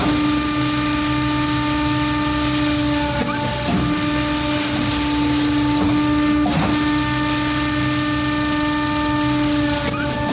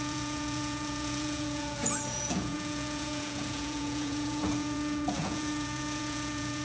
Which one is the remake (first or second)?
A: second